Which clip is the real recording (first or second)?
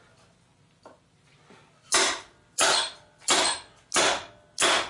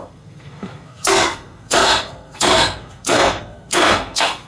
first